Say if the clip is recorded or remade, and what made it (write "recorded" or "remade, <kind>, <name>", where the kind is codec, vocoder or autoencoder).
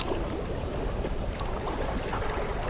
recorded